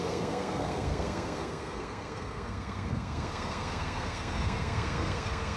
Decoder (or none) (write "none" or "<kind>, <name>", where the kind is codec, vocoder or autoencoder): codec, SNAC